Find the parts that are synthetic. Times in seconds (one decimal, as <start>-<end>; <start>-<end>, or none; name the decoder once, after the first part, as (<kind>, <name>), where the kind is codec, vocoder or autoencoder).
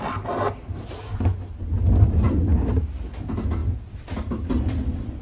none